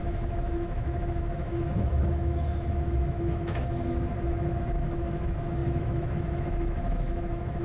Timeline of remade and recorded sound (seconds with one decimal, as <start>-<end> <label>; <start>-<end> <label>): 0.0-7.6 remade